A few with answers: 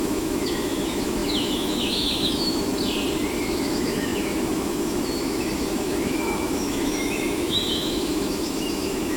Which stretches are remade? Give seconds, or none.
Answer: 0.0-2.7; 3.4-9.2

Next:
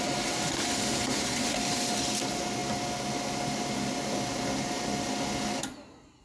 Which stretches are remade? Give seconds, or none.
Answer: none

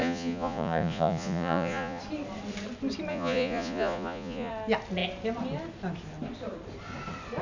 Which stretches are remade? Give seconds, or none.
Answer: 0.0-2.0; 3.1-4.5

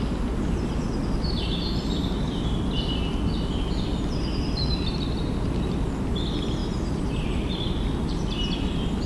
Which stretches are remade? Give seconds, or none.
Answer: none

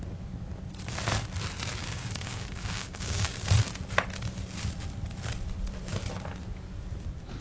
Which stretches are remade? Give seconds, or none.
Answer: 1.8-3.4